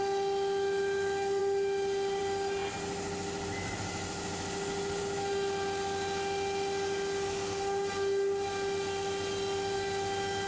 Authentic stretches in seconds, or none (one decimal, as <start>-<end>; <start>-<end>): 0.0-10.5